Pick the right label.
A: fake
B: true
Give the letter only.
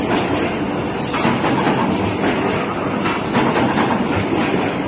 B